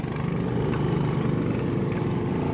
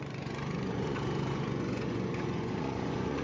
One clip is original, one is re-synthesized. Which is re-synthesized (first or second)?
second